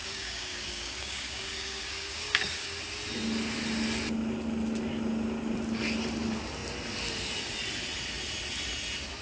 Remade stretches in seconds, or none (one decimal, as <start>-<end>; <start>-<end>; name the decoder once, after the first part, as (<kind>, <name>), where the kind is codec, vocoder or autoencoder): 0.0-2.8 (codec, DAC)